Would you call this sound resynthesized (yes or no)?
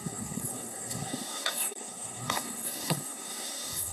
yes